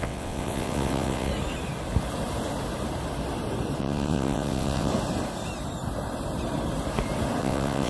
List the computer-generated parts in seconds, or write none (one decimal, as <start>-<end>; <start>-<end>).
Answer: 0.0-1.3; 3.8-4.9; 7.4-7.9

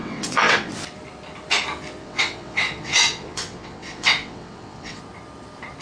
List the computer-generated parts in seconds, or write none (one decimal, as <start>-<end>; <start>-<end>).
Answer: 0.0-0.7; 2.0-5.0

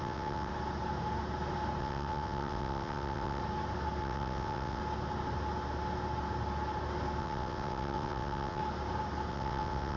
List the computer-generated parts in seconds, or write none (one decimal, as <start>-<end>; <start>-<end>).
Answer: 0.0-0.5; 1.8-3.4; 4.0-4.8; 7.2-8.6; 9.3-10.0

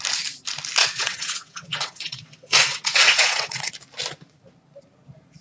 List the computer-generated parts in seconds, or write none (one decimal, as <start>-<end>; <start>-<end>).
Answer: 0.8-3.7

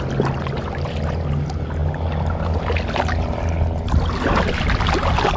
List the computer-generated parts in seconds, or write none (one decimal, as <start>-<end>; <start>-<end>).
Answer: none

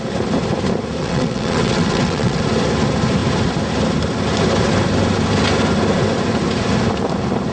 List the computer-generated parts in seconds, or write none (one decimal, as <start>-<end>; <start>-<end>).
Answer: 1.0-2.4

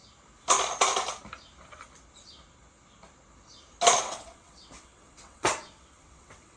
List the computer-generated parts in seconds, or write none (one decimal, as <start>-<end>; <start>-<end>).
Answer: 4.0-6.6

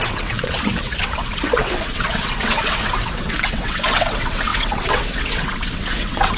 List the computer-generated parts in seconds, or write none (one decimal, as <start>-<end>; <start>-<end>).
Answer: 0.0-6.4